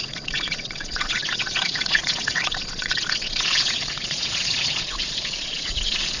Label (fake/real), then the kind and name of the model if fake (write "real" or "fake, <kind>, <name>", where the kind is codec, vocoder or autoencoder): fake, vocoder, Vocos